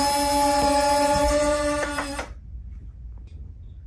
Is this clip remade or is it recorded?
recorded